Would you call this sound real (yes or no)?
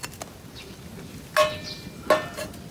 yes